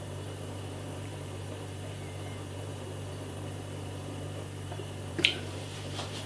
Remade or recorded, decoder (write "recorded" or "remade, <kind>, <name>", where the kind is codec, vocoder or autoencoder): remade, vocoder, BigVGAN v2